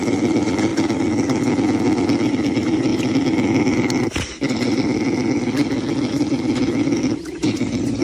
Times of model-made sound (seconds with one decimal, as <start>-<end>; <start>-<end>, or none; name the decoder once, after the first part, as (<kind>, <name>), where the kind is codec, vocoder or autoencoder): 0.0-0.7 (vocoder, BigVGAN v2); 2.3-2.9; 5.9-8.0